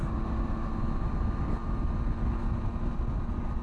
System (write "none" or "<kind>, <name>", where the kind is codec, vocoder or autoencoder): none